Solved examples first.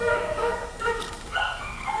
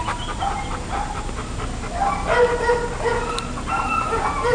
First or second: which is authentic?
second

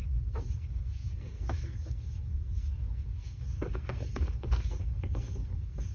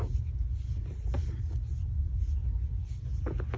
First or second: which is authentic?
second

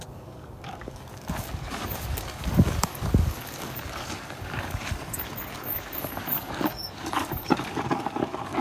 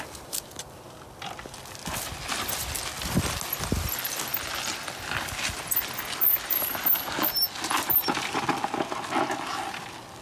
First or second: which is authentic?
second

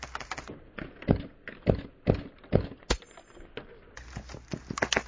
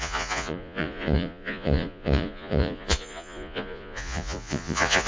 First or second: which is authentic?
first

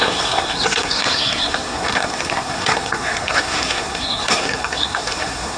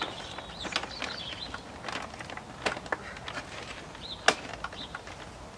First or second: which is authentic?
second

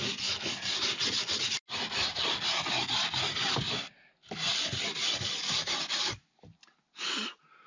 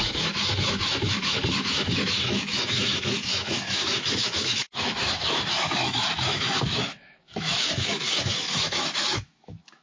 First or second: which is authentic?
first